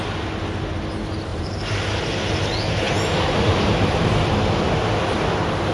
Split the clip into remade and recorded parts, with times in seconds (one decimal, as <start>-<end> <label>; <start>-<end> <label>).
0.0-1.3 recorded; 1.3-4.7 remade; 4.7-5.7 recorded